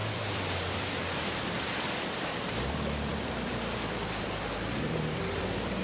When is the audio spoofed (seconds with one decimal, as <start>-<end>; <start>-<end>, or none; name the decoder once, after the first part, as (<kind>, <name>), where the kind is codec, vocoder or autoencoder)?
0.0-2.7 (vocoder, BigVGAN v2); 3.1-5.8

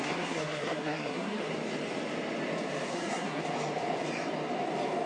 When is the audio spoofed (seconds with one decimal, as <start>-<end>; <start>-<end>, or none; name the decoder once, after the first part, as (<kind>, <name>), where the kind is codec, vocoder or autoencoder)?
0.0-1.5 (codec, SNAC); 2.9-3.4

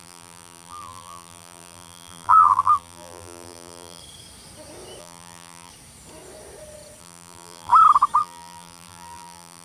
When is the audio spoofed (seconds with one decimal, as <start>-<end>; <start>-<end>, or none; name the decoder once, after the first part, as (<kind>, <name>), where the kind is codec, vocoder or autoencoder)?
0.0-4.0 (vocoder, BigVGAN v2); 5.0-5.7; 7.0-7.7; 8.2-9.6

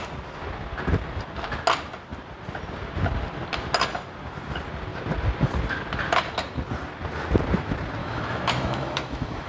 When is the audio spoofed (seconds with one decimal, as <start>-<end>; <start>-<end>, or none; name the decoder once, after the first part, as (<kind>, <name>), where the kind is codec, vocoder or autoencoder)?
8.0-9.5 (autoencoder, DAC-VAE)

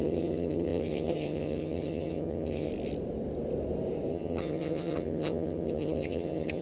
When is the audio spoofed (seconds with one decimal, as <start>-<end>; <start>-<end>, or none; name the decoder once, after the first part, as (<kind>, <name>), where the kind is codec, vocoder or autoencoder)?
0.0-2.7 (vocoder, HiFi-GAN); 4.1-6.6

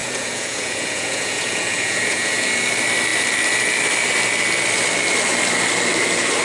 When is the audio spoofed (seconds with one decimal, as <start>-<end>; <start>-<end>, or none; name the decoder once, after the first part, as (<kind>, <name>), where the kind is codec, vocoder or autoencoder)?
0.0-2.5 (vocoder, Vocos)

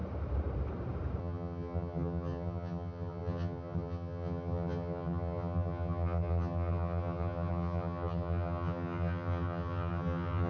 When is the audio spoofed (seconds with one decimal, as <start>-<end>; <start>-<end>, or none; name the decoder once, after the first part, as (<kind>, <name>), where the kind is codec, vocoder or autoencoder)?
1.2-10.5 (vocoder, HiFi-GAN)